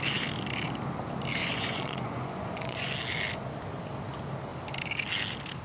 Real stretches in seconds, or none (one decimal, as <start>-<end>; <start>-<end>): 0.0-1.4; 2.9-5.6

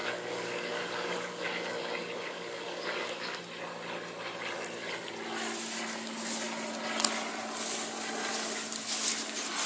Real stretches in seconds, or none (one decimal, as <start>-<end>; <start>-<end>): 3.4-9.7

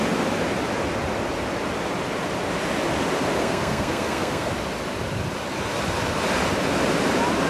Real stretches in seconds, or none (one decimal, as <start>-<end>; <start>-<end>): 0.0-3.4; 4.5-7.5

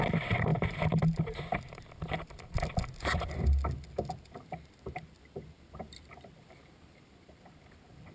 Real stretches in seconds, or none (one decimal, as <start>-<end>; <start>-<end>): none

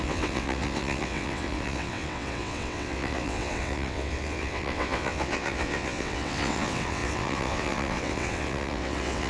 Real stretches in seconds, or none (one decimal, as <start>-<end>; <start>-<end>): none

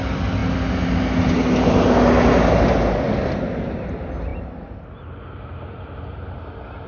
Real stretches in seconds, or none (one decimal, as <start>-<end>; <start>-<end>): 0.0-6.9